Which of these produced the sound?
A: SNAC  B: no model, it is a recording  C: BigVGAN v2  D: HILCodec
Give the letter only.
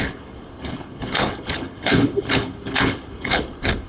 D